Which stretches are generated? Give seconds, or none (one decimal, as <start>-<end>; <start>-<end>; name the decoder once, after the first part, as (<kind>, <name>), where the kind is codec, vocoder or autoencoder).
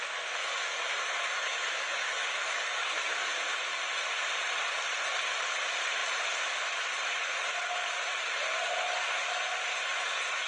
0.4-3.8 (autoencoder, DAC-VAE)